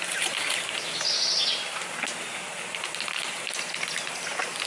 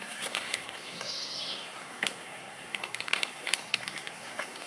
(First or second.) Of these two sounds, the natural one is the first